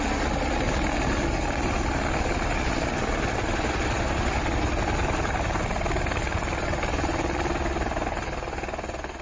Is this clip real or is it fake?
real